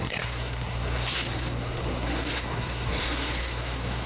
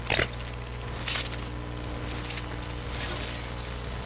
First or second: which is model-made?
first